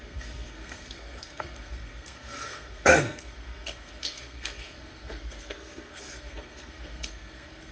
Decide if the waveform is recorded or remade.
remade